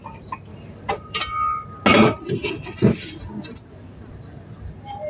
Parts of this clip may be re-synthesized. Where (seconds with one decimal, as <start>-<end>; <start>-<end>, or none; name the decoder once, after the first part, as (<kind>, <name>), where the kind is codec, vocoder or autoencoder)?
0.5-1.2 (vocoder, BigVGAN v2); 1.9-5.1